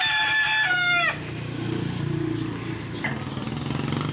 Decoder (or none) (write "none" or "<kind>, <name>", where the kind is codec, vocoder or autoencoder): none